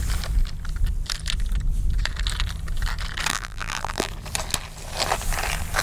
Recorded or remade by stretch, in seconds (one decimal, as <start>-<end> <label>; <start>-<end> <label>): 0.0-3.3 recorded; 3.3-4.1 remade; 4.1-5.8 recorded